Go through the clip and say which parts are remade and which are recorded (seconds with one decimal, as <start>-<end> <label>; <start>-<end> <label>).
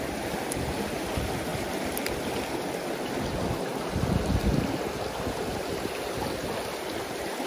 0.0-7.5 recorded